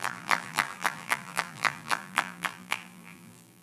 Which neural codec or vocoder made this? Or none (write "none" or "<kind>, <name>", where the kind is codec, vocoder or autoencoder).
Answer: vocoder, BigVGAN v2